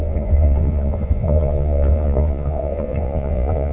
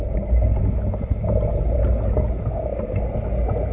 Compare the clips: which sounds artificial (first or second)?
first